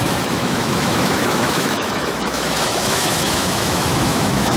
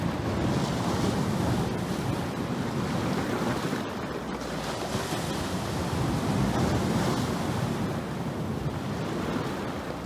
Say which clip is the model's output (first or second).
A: first